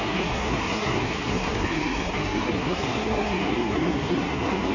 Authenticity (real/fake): fake